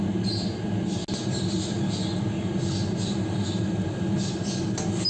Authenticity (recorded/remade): recorded